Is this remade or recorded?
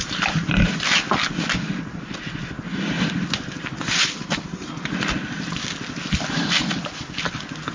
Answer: recorded